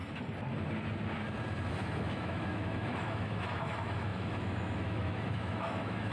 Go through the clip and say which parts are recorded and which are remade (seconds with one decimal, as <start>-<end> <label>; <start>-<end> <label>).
0.0-1.7 recorded; 1.7-6.1 remade